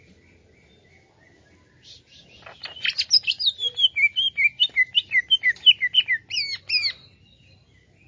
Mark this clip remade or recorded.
recorded